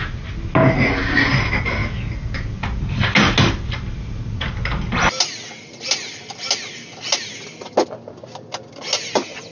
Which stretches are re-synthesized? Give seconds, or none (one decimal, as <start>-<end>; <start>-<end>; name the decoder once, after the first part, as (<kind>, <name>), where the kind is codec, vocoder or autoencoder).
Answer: none